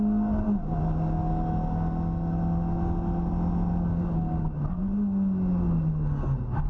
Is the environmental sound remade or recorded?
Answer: recorded